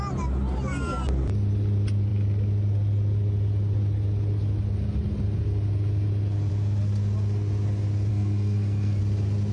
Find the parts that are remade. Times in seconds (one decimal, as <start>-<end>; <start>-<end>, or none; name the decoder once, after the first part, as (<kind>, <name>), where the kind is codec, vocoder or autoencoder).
8.1-9.0 (codec, SNAC)